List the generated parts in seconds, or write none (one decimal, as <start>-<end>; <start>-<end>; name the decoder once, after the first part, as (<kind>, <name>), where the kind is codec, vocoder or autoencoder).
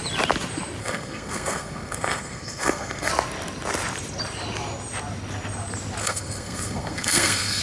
0.8-3.1 (codec, SNAC); 6.0-7.6